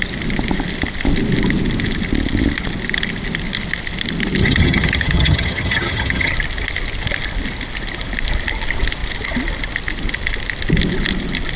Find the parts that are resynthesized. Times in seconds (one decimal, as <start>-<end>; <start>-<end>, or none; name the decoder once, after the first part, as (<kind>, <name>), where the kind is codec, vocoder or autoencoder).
4.4-6.3 (vocoder, HiFi-GAN)